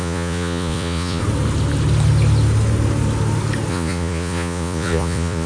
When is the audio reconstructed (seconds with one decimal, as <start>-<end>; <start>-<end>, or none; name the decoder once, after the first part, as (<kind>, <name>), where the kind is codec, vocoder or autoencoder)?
0.0-1.2 (vocoder, Vocos); 3.7-5.5

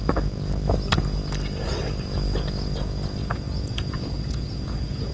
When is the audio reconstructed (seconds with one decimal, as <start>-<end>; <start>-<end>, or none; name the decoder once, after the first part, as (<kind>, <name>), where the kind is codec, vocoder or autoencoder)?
3.2-5.1 (vocoder, Vocos)